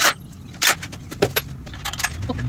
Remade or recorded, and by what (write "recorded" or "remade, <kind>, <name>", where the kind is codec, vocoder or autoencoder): recorded